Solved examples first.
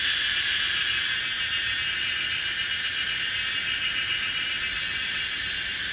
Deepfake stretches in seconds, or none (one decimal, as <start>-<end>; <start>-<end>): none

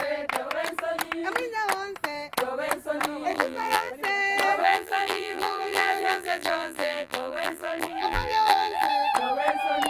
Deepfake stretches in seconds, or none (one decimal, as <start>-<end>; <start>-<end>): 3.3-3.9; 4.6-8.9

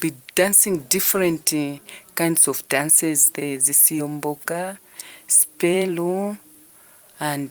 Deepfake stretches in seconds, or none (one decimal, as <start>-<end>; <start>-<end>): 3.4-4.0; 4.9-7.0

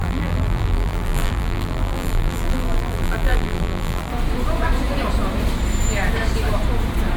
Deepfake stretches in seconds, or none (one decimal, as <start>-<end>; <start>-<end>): 0.0-4.1